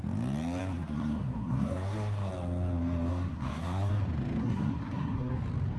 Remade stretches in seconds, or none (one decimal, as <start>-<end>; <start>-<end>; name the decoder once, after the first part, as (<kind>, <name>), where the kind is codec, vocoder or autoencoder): 0.6-2.3 (codec, SNAC); 3.1-3.9; 4.4-5.3